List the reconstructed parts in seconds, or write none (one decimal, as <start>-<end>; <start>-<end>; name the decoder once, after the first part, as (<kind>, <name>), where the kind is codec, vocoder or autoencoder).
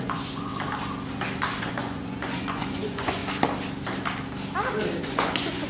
0.0-0.5 (vocoder, Vocos); 1.6-3.2; 5.0-5.7